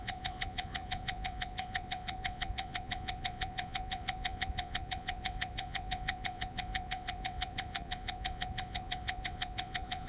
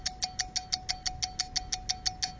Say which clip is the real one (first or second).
second